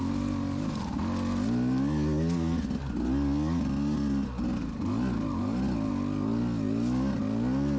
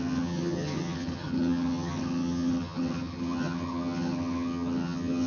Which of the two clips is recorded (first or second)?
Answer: first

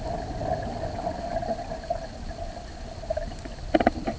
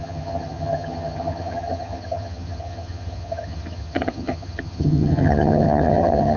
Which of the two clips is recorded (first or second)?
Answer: first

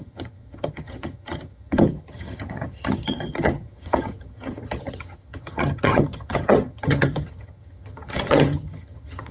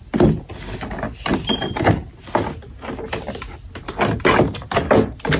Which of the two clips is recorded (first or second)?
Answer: second